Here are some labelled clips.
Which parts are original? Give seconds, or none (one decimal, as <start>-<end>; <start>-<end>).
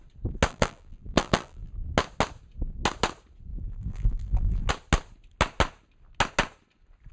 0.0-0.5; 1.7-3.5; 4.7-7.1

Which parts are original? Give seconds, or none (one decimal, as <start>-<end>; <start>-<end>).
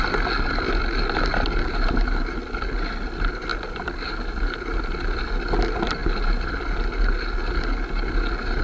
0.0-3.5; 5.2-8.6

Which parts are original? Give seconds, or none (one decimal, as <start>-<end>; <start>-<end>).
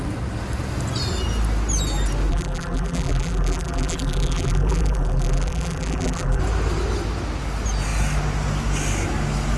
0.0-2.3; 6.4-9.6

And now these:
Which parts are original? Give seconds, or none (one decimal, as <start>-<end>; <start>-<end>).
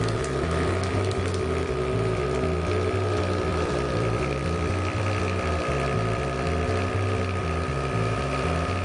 0.0-3.5; 5.2-8.8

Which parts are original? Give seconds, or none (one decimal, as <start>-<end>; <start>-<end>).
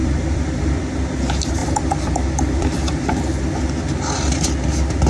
0.8-1.6; 3.1-5.1